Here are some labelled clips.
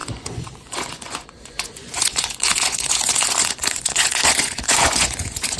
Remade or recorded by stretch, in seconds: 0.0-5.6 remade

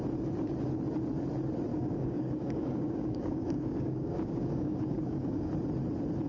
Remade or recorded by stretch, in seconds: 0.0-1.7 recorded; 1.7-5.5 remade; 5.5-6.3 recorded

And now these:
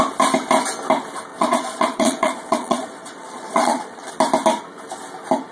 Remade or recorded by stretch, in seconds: 0.0-1.3 recorded; 1.3-4.1 remade; 4.1-5.5 recorded

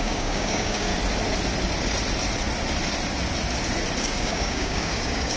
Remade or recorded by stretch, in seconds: 0.0-0.9 remade; 0.9-4.0 recorded; 4.0-5.4 remade

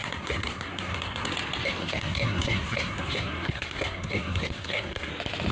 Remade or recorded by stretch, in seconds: 0.0-1.3 remade; 1.3-1.8 recorded; 1.8-5.1 remade; 5.1-5.5 recorded